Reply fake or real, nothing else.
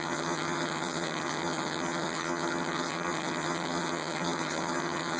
fake